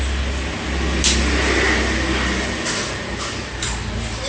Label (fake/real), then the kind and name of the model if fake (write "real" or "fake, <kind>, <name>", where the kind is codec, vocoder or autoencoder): real